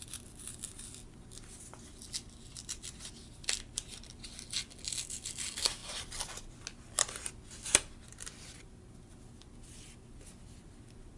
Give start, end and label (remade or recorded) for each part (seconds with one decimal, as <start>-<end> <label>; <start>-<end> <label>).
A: 0.0-11.2 recorded